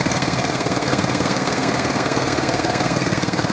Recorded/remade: remade